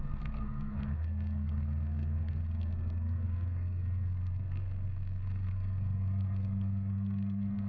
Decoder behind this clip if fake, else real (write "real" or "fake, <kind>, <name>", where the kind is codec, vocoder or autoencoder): fake, codec, SNAC